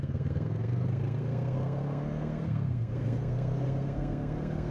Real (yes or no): no